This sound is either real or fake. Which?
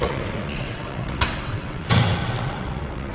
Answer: fake